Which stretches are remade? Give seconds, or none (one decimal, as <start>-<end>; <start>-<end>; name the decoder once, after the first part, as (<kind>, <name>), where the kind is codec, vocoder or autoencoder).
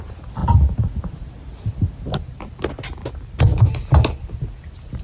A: none